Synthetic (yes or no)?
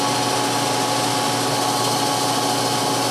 no